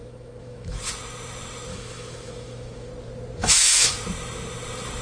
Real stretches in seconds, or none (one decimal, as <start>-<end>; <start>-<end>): 0.8-1.7; 2.9-3.4; 3.9-5.0